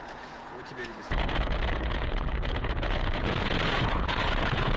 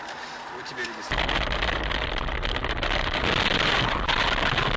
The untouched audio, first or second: second